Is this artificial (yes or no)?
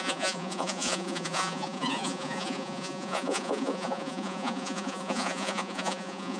yes